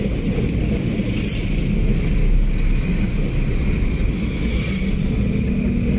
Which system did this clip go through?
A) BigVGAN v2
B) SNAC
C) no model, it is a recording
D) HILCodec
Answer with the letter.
C